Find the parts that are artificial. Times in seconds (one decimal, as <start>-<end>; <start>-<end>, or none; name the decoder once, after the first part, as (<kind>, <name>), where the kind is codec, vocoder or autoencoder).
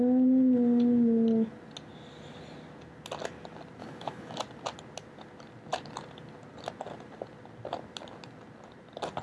3.8-4.4 (autoencoder, DAC-VAE)